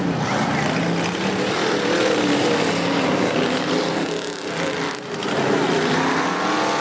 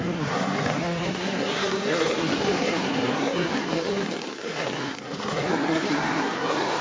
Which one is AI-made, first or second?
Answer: second